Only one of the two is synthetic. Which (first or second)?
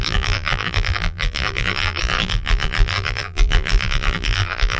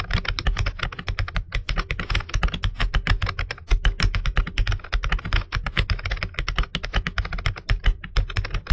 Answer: first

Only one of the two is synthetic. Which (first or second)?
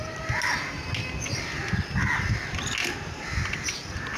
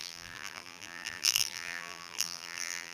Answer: second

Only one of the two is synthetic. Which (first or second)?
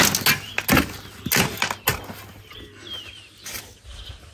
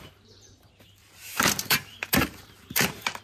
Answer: second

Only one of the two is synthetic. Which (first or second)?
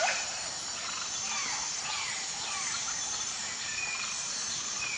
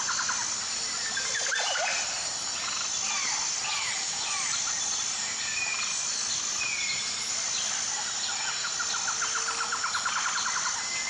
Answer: first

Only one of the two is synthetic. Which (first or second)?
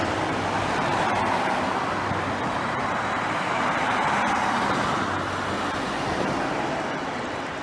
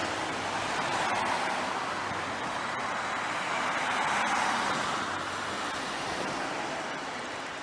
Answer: first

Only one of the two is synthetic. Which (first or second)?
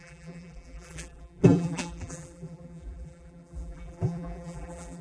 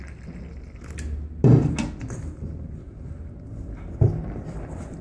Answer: first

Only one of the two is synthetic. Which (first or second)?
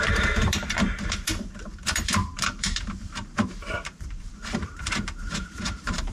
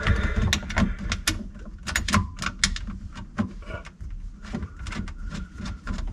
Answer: first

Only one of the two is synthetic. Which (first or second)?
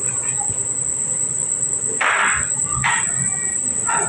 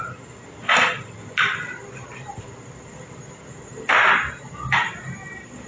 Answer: second